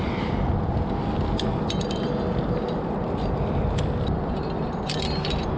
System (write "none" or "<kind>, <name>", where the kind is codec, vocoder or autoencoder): none